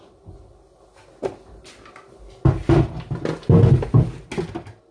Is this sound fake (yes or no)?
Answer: no